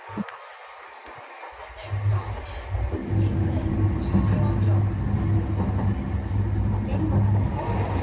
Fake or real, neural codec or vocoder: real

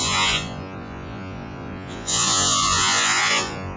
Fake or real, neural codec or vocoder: fake, vocoder, Vocos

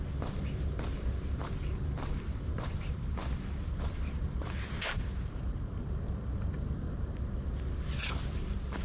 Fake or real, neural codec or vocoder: fake, vocoder, BigVGAN v2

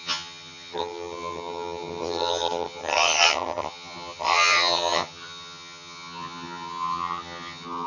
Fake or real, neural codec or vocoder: fake, vocoder, HiFi-GAN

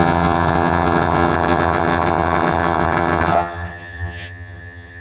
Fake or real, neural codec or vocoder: fake, vocoder, HiFi-GAN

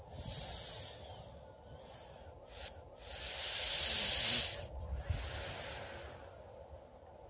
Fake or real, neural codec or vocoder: real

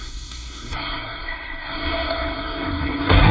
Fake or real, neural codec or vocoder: fake, codec, SNAC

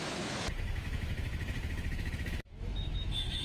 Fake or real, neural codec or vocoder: fake, autoencoder, DAC-VAE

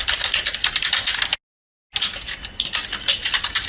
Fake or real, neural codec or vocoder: real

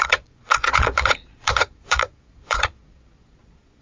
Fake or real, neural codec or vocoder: fake, vocoder, Vocos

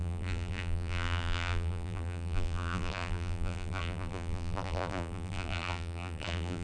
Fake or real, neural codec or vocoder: fake, vocoder, BigVGAN v2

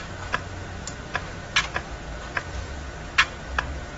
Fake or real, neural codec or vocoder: real